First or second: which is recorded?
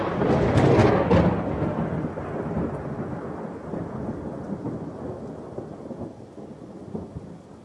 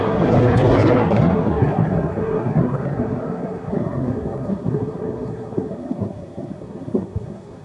first